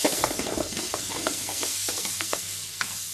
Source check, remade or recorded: remade